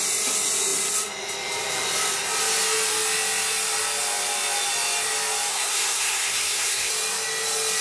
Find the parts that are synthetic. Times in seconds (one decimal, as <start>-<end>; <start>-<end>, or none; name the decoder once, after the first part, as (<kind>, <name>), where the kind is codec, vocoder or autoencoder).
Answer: 5.5-6.9 (codec, SNAC)